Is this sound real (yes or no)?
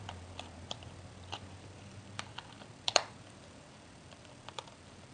no